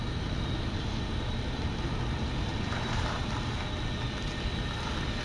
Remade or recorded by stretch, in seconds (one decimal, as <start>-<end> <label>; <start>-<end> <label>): 0.0-2.5 recorded; 2.5-3.2 remade; 3.2-5.2 recorded